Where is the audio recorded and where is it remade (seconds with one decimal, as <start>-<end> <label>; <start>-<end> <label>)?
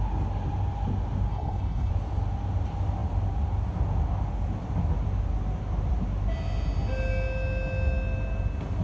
0.0-1.3 recorded; 1.3-1.9 remade; 1.9-8.8 recorded